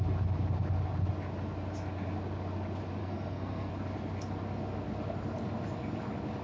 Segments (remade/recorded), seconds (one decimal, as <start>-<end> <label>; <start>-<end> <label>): 0.0-3.0 recorded; 3.0-3.7 remade; 3.7-6.4 recorded